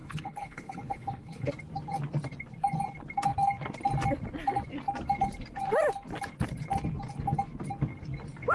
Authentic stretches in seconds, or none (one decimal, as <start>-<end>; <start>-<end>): 1.5-8.5